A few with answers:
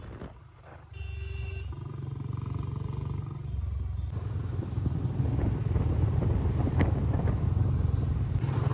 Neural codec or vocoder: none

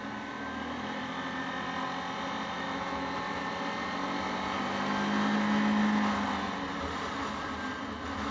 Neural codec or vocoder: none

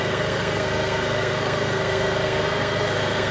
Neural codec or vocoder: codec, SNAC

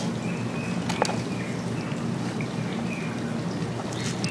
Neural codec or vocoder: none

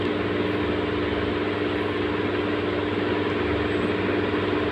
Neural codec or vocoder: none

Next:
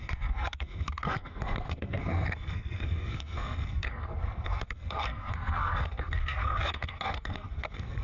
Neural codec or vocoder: codec, SNAC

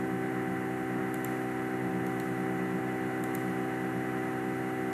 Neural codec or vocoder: none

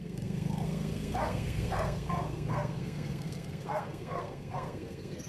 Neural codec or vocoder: codec, SNAC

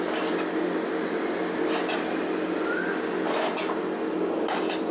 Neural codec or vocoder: none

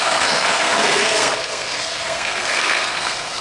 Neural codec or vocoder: codec, SNAC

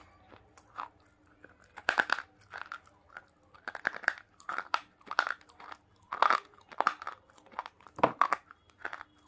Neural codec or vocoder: none